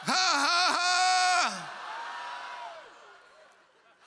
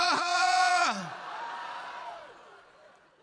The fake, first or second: second